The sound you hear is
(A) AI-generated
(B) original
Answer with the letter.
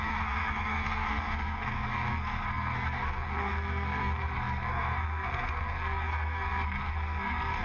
A